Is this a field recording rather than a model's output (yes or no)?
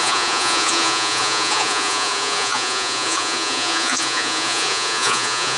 no